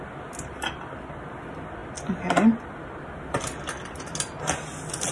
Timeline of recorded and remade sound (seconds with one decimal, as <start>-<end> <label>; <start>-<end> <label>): 0.0-5.1 recorded